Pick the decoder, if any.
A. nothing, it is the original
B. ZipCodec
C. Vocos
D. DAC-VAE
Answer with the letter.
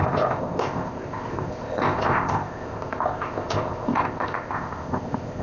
B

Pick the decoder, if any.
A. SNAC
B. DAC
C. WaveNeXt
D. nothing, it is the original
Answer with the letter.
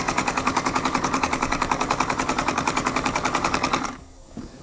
B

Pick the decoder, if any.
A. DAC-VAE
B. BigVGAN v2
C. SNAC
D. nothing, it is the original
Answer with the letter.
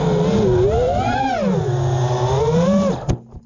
D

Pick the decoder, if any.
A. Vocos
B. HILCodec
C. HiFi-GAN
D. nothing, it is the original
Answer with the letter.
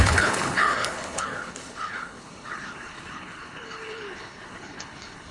B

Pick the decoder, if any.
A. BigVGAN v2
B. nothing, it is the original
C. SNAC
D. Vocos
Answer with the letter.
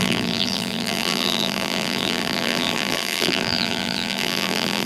A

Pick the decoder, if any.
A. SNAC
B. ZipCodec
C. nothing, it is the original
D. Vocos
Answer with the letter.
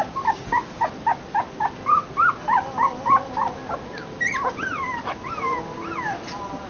C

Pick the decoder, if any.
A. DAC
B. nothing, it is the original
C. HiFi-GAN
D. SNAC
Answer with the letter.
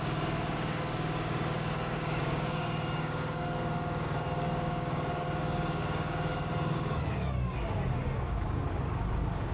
A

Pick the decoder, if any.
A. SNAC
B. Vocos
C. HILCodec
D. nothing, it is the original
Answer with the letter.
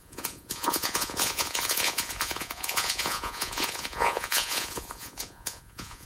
B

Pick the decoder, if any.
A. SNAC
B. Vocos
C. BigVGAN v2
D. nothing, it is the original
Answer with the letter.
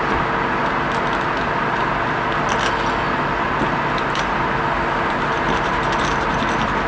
D